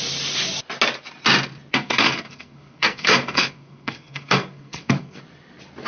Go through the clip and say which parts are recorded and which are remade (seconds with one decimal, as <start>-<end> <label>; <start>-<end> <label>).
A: 0.0-1.7 recorded; 1.7-5.2 remade; 5.2-5.9 recorded